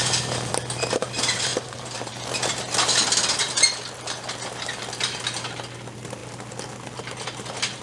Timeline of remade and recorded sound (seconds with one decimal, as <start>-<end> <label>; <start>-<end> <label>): 0.0-7.8 recorded